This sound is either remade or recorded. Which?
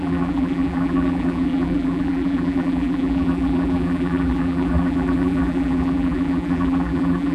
remade